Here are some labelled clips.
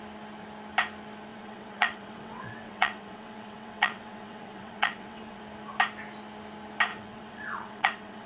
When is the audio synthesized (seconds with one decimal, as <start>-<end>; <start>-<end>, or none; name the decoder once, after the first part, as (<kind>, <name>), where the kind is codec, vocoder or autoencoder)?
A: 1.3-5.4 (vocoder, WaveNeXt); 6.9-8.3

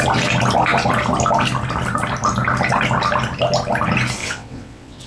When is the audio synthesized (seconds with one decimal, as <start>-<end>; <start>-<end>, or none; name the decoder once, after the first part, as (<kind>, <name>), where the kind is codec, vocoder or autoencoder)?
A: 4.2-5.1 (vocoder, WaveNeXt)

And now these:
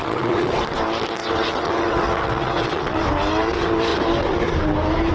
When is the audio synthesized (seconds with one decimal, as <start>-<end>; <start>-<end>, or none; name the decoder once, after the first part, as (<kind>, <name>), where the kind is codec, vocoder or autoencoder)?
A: 0.0-0.6 (vocoder, WaveNeXt); 1.2-3.0